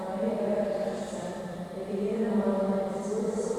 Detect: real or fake fake